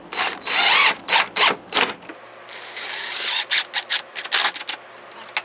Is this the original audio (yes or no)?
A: yes